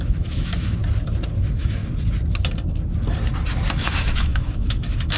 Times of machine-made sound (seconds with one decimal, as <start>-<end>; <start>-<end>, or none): 0.0-0.8; 1.4-1.8; 3.7-5.2